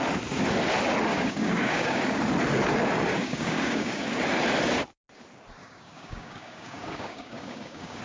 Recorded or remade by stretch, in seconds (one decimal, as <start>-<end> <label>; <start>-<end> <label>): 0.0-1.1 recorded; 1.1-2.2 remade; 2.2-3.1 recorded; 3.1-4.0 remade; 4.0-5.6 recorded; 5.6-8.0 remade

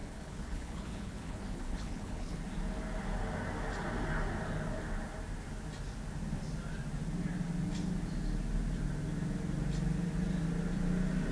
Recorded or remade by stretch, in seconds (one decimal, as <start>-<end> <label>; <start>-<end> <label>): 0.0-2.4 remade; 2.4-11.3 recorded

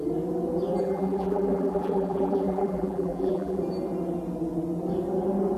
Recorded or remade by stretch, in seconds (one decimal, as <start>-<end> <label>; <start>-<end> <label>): 0.0-0.8 recorded; 0.8-3.6 remade; 3.6-5.6 recorded

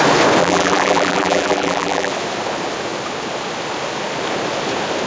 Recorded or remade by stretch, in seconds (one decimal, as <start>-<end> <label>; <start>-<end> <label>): 0.0-0.4 recorded; 0.4-2.1 remade; 2.1-5.1 recorded

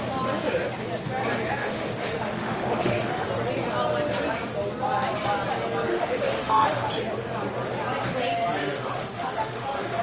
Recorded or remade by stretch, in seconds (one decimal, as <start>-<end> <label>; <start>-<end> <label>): 0.0-1.6 recorded; 1.6-3.3 remade; 3.3-5.9 recorded; 5.9-6.9 remade; 6.9-8.6 recorded; 8.6-10.0 remade

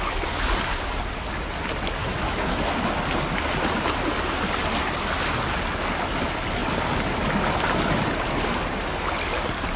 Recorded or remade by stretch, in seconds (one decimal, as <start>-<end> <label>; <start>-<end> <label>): 0.0-2.0 recorded; 2.0-2.6 remade; 2.6-9.8 recorded